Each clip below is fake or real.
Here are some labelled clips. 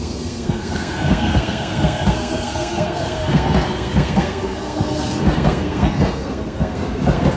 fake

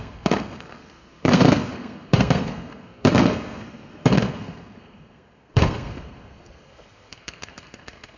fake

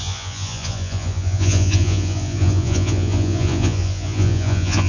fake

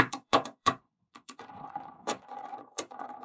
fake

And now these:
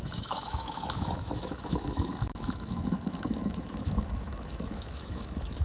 fake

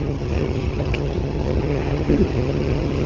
fake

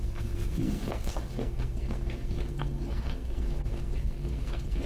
fake